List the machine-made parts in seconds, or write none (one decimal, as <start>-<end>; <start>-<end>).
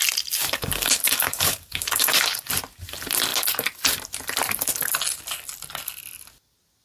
0.4-2.5